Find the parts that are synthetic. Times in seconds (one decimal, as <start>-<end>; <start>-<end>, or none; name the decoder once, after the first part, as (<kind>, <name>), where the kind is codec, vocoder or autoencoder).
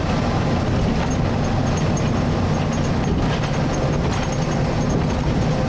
none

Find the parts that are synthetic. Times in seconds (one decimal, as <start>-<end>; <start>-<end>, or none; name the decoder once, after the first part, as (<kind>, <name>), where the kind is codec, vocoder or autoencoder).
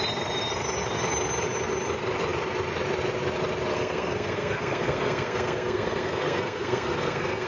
3.7-7.5 (codec, SNAC)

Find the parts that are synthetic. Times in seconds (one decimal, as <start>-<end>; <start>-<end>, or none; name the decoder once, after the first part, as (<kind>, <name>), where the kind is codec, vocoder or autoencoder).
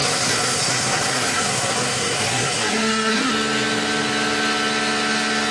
0.0-3.3 (codec, SNAC)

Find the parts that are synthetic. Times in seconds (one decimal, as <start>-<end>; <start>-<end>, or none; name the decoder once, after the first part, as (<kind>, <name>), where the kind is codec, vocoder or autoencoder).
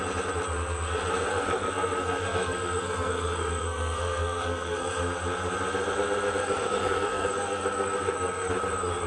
1.3-5.0 (codec, SNAC); 6.4-8.5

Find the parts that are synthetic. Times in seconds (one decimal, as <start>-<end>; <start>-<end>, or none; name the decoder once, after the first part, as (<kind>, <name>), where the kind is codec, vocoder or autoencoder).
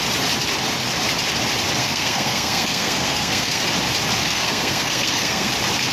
1.8-3.6 (codec, SNAC); 4.2-5.5